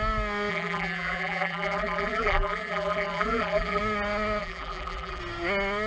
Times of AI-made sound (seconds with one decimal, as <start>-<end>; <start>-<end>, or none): 0.5-3.8; 4.4-5.2